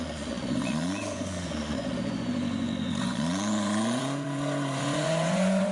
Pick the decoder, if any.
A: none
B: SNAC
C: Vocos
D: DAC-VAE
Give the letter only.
C